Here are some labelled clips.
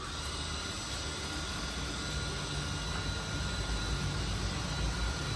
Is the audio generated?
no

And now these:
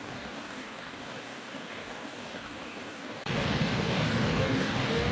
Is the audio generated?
yes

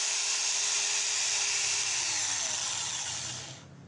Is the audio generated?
no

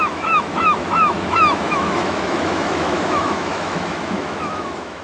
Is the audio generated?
yes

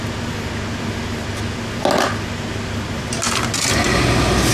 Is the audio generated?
no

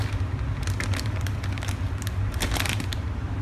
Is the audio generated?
no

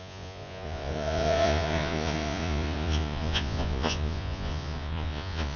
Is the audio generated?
yes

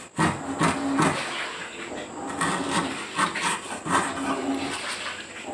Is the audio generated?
no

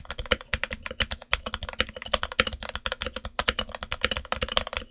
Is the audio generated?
no